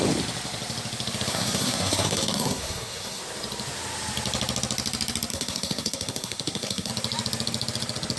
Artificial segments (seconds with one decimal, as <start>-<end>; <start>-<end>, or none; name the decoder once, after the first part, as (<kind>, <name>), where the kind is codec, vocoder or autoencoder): 1.3-3.2 (codec, SNAC); 5.3-6.9